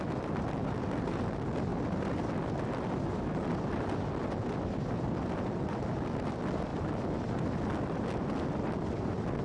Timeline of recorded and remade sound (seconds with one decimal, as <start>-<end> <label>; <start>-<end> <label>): 0.0-9.4 recorded